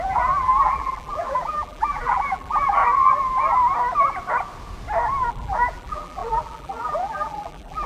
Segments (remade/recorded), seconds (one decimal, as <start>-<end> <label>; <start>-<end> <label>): 0.0-2.8 remade; 2.8-5.3 recorded; 5.3-7.9 remade